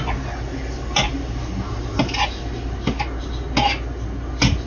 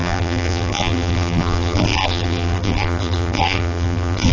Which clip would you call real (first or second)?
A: first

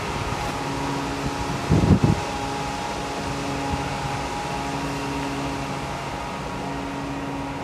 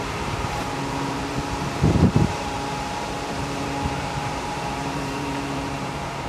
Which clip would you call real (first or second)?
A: first